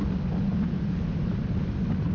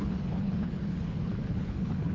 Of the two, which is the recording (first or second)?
first